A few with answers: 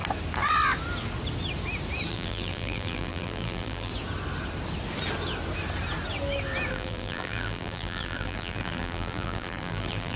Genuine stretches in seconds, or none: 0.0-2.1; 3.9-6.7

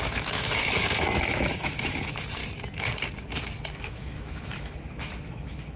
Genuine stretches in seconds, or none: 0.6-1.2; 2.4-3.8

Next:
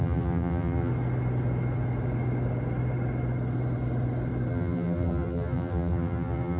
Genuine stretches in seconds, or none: 0.9-4.5